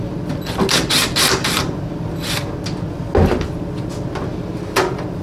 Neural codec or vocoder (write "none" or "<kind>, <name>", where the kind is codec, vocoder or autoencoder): none